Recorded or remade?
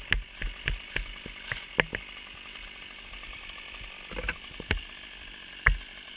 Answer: recorded